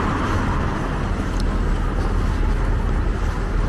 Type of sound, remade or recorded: recorded